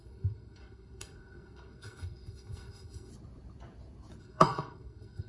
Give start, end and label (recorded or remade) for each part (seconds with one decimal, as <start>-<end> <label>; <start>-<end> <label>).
0.0-3.1 remade; 3.1-4.2 recorded; 4.2-5.3 remade